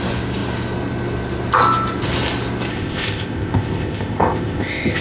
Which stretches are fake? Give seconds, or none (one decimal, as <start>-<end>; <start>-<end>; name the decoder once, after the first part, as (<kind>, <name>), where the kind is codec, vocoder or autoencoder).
2.7-5.0 (codec, ZipCodec)